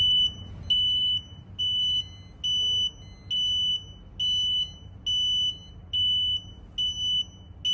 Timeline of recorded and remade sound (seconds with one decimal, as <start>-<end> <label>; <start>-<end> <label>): 0.0-7.7 recorded